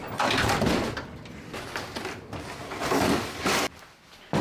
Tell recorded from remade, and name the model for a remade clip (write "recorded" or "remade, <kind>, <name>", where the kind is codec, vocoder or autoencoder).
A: recorded